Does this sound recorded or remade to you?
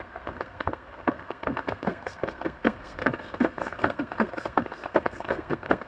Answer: remade